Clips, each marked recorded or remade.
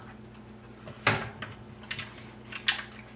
recorded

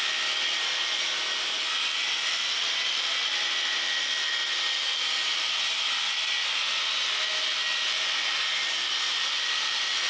recorded